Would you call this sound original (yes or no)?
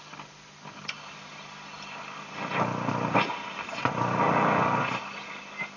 yes